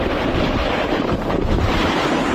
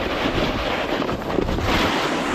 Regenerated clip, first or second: first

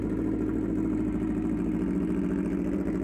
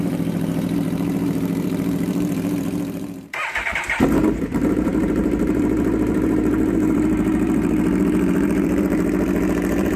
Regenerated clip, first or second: second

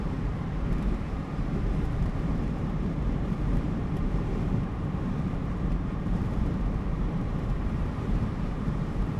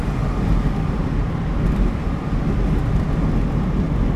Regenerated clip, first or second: first